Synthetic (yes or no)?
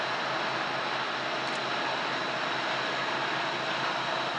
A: no